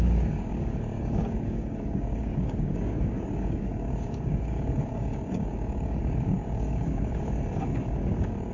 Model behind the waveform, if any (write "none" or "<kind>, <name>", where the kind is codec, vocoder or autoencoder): codec, DAC